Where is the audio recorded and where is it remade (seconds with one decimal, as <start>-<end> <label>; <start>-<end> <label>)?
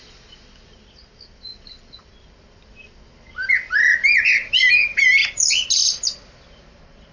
0.0-7.1 recorded